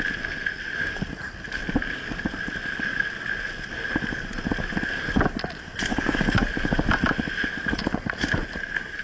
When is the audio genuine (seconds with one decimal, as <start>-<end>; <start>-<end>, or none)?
0.0-5.9; 6.4-9.0